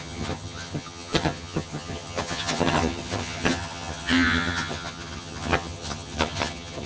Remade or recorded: remade